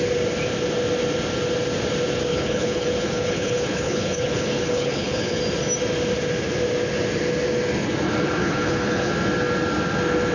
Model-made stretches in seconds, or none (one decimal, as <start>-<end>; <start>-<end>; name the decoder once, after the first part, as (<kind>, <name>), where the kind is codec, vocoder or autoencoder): 2.3-5.4 (codec, HILCodec); 8.4-9.1